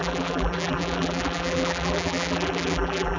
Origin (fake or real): fake